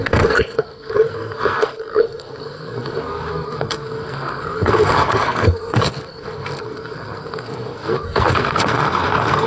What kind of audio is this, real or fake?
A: fake